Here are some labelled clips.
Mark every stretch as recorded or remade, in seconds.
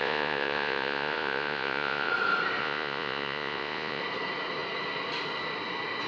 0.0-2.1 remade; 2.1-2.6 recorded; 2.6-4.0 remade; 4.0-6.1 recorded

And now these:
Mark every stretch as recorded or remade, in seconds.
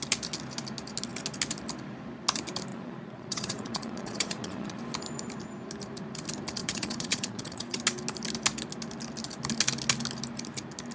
0.0-2.7 recorded; 2.7-4.8 remade; 4.8-6.6 recorded; 6.6-7.8 remade; 7.8-10.9 recorded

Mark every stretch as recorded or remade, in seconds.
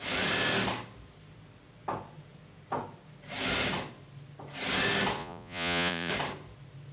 0.0-5.2 recorded; 5.2-6.1 remade; 6.1-6.9 recorded